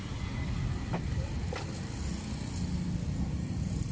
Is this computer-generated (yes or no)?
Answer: no